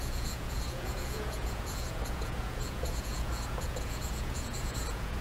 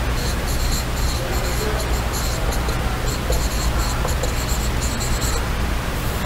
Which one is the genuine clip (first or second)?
second